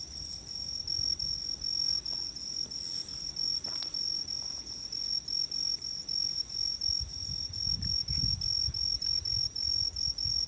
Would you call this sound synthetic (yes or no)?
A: no